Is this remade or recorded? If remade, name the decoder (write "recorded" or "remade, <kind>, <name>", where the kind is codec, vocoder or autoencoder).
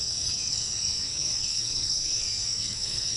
remade, codec, SNAC